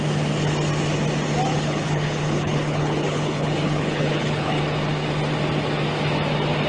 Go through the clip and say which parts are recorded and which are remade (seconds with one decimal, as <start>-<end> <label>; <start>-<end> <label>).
0.0-1.5 recorded; 1.5-4.6 remade; 4.6-6.7 recorded